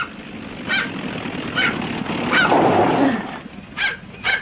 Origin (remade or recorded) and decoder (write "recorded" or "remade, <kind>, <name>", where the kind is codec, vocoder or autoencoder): remade, vocoder, BigVGAN v2